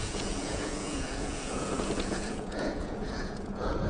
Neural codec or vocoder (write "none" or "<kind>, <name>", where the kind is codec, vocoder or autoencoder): vocoder, Vocos